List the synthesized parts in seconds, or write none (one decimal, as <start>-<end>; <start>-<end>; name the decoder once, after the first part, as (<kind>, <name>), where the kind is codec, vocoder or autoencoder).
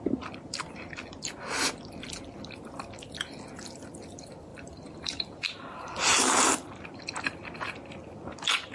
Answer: 4.5-7.0 (vocoder, BigVGAN v2)